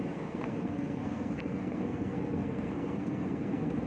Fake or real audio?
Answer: fake